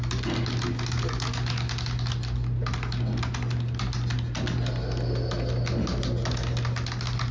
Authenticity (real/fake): real